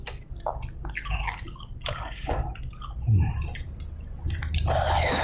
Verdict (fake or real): real